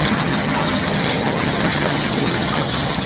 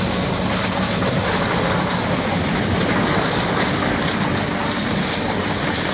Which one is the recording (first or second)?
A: second